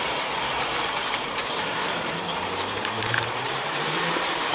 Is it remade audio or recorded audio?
remade